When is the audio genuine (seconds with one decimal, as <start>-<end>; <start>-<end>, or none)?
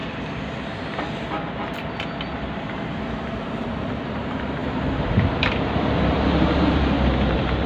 0.0-2.4